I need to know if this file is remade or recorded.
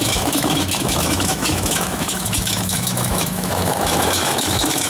remade